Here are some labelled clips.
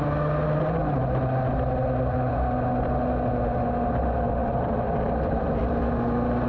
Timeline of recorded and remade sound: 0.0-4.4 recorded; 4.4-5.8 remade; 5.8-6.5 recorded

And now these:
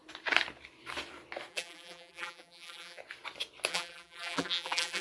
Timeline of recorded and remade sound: 0.0-1.5 recorded; 1.5-3.0 remade; 3.0-3.7 recorded; 3.7-5.0 remade

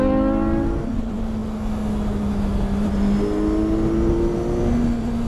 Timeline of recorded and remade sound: 0.0-5.3 recorded

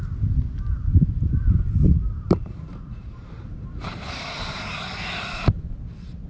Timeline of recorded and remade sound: 0.0-0.9 recorded; 0.9-4.7 remade; 4.7-6.3 recorded

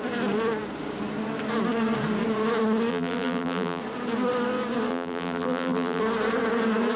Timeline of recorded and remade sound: 0.0-2.9 recorded; 2.9-3.8 remade; 3.8-4.9 recorded; 4.9-6.0 remade; 6.0-7.0 recorded